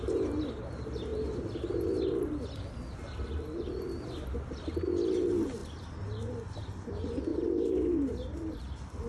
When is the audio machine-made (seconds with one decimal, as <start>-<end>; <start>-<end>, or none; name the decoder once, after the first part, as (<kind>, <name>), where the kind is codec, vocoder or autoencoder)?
7.3-8.6 (vocoder, BigVGAN v2)